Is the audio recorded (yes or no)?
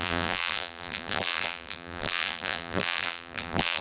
no